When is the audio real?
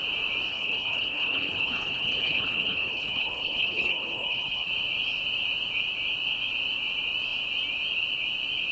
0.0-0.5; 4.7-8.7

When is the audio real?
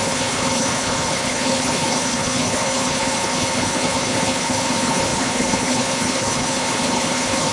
none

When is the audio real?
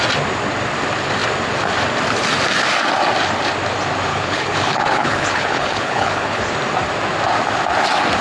0.0-4.1; 6.4-8.2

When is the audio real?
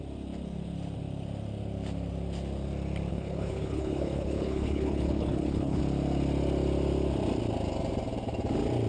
0.0-3.1; 5.8-8.9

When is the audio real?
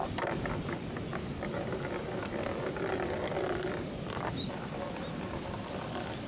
0.0-6.3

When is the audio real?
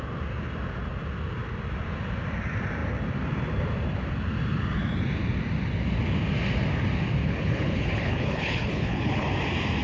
0.0-7.2; 9.3-9.8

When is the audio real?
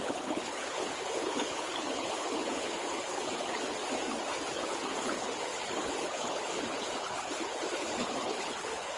3.8-4.5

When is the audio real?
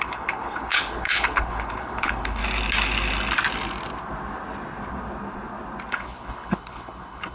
2.4-5.9